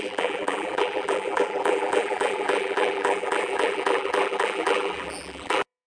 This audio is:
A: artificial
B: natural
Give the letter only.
A